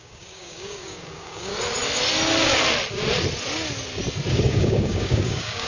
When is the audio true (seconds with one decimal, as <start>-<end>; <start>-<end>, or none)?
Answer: 1.5-4.3